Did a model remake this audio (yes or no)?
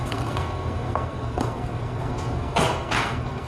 yes